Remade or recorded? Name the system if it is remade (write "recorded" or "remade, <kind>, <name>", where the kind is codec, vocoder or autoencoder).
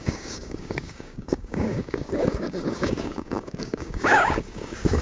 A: remade, codec, DAC